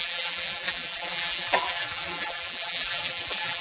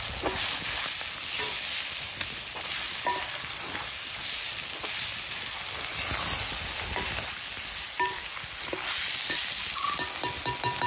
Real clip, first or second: second